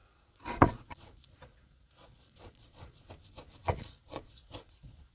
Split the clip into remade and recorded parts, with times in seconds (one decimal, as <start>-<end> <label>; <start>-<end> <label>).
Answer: 0.0-3.1 remade; 3.1-3.6 recorded; 3.6-5.1 remade